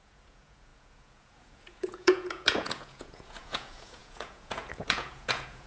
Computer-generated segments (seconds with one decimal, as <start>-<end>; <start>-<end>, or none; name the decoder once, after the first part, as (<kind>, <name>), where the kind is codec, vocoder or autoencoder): 0.0-5.7 (vocoder, Vocos)